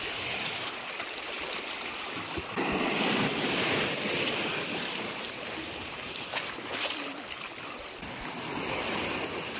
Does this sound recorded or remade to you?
recorded